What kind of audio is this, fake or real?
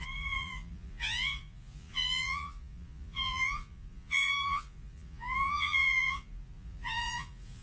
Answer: fake